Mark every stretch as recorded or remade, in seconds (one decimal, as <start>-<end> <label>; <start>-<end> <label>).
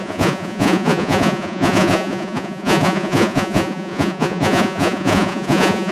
0.0-5.9 remade